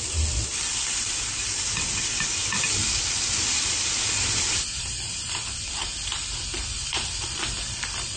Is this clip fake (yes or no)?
yes